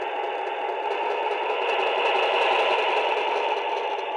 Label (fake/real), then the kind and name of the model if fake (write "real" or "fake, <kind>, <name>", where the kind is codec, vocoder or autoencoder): real